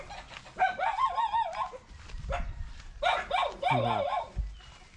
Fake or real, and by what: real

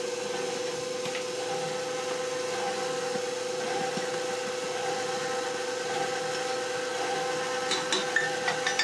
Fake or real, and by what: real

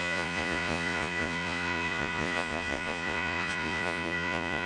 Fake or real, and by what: fake, vocoder, Vocos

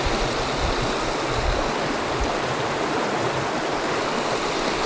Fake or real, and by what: real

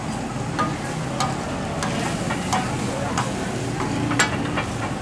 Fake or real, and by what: real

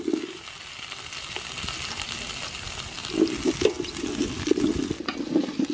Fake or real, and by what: real